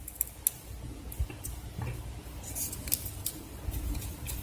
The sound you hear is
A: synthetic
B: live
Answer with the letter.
B